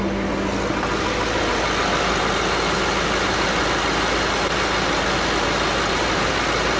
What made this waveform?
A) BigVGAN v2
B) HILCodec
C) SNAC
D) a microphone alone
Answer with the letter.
D